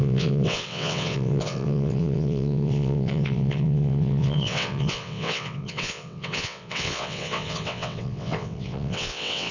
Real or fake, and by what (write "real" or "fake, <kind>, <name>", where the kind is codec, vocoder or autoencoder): fake, vocoder, WaveNeXt